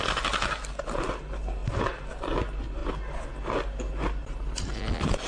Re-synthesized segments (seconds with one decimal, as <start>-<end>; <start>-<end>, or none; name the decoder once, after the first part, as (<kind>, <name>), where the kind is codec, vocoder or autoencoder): none